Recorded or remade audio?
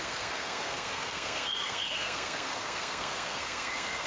remade